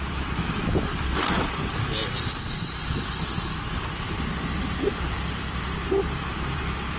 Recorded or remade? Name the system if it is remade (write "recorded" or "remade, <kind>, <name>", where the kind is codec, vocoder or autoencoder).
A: remade, vocoder, BigVGAN v2